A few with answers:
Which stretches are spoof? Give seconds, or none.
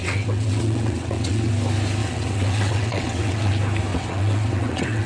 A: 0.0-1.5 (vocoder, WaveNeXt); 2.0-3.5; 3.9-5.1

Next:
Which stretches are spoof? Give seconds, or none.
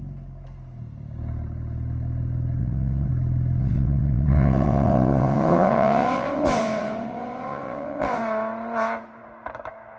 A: 2.6-3.1 (vocoder, WaveNeXt); 3.6-8.2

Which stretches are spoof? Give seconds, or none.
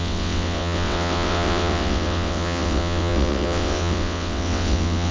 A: 0.0-5.1 (vocoder, WaveNeXt)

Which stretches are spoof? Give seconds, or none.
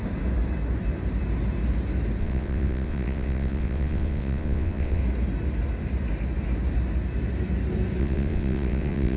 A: 2.2-5.0 (vocoder, WaveNeXt); 8.0-9.2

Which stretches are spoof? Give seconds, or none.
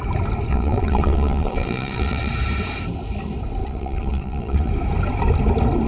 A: 0.5-2.3 (vocoder, WaveNeXt); 3.6-4.7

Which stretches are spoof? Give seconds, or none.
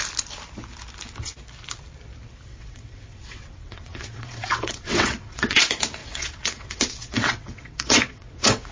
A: 2.5-5.6 (vocoder, WaveNeXt); 6.0-8.7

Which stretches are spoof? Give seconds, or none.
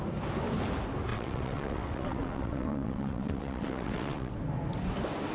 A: 1.1-4.3 (vocoder, WaveNeXt)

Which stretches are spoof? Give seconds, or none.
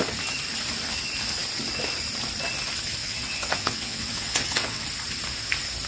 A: 3.0-4.8 (vocoder, WaveNeXt)